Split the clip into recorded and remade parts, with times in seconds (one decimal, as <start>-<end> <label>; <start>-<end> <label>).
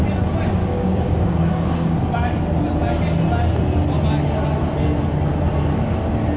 0.0-0.6 recorded; 0.6-2.1 remade; 2.1-6.4 recorded